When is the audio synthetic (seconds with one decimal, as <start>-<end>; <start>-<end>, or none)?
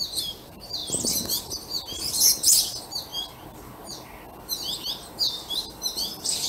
0.0-0.8; 1.4-3.1; 5.5-6.5